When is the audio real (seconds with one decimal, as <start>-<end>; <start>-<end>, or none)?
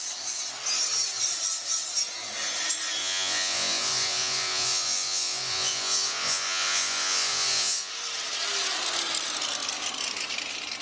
0.0-3.0; 7.9-10.8